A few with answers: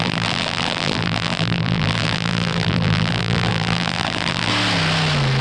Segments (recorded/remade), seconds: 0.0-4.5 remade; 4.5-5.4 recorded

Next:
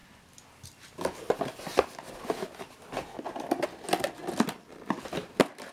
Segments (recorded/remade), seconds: 0.0-5.7 recorded

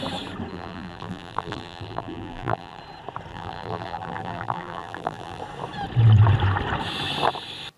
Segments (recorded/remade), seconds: 0.0-0.5 recorded; 0.5-2.8 remade; 2.8-3.3 recorded; 3.3-5.4 remade; 5.4-7.8 recorded